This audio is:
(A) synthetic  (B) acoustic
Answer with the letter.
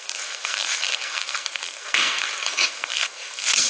A